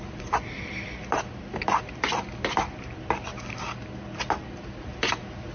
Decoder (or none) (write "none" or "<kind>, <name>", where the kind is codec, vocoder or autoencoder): none